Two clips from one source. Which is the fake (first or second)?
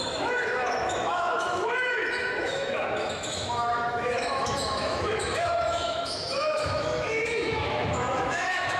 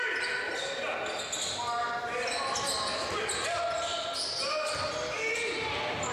first